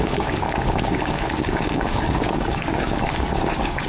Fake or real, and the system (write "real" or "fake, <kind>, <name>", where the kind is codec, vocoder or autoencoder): fake, codec, DAC